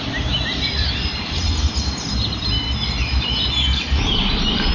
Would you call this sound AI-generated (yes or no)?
no